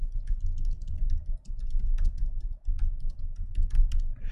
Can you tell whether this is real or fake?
real